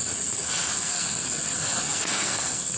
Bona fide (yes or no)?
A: no